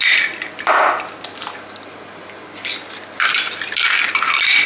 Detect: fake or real real